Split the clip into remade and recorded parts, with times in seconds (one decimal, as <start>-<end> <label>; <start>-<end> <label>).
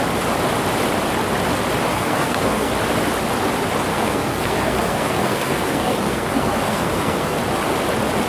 0.0-1.9 recorded; 1.9-2.7 remade; 2.7-3.9 recorded; 3.9-7.4 remade; 7.4-8.3 recorded